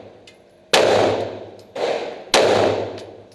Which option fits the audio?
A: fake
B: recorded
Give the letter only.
B